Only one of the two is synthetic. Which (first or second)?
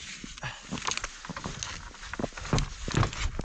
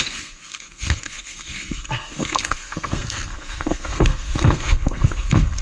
second